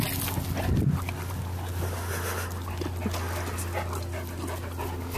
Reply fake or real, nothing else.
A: real